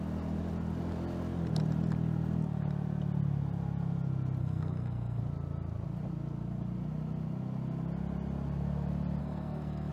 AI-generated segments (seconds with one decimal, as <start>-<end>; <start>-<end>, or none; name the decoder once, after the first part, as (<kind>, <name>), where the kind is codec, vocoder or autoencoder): 4.4-5.2 (codec, SNAC); 9.2-9.9